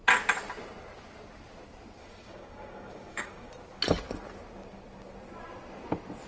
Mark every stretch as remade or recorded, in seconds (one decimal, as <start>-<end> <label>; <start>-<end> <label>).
0.0-2.0 recorded; 2.0-3.5 remade; 3.5-6.3 recorded